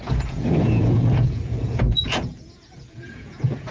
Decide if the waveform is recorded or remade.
remade